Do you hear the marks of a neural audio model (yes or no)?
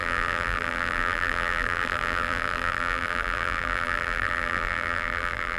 yes